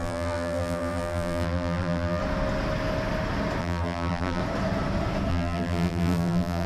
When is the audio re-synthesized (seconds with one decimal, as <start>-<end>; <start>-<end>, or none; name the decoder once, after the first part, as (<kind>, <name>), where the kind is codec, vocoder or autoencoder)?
0.0-2.2 (vocoder, BigVGAN v2); 3.6-4.4; 5.3-6.7